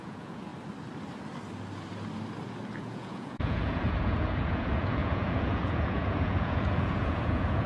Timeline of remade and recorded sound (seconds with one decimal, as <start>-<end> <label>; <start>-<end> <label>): 0.0-0.5 remade; 0.5-2.8 recorded; 2.8-7.7 remade